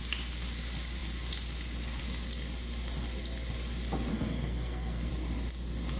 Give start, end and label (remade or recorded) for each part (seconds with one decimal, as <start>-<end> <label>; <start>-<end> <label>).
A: 0.0-4.1 recorded; 4.1-5.1 remade; 5.1-6.0 recorded